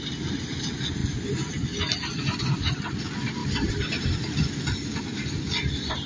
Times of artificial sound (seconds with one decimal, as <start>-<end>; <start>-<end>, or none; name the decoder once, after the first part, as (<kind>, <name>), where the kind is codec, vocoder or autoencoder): none

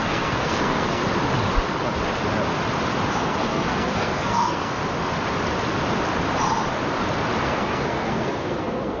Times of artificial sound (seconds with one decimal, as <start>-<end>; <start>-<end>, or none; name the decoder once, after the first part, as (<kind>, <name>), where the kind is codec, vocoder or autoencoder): 0.0-1.0 (codec, SNAC); 3.1-4.8; 7.4-9.0

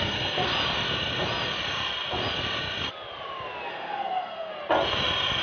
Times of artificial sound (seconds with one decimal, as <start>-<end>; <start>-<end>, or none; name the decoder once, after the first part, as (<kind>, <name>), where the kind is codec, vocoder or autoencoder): 0.0-0.5 (codec, SNAC); 3.7-4.5

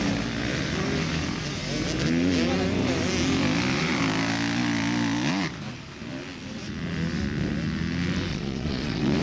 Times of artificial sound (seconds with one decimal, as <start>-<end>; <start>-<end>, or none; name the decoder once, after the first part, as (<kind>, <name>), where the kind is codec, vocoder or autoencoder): 8.3-9.2 (vocoder, Vocos)

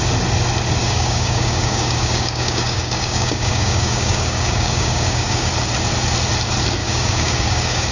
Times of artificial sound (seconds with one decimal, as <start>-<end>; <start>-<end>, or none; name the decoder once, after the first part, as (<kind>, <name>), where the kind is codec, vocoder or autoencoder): 0.8-5.5 (codec, DAC); 6.8-7.9

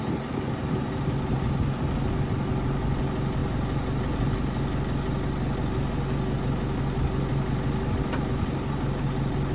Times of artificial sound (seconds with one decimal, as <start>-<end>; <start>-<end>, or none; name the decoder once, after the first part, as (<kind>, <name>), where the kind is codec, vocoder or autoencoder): none

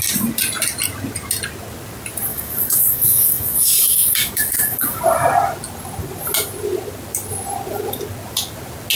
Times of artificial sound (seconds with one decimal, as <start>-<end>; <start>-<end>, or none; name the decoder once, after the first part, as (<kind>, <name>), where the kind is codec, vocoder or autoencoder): 2.3-5.0 (codec, DAC)